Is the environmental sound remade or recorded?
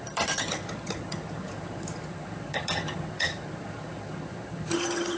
remade